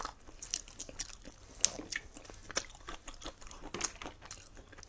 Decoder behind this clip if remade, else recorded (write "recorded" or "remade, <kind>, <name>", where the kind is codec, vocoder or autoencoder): recorded